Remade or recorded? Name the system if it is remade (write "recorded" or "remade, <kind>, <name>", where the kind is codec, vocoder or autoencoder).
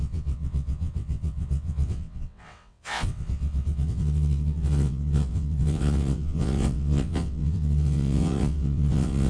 remade, vocoder, WaveNeXt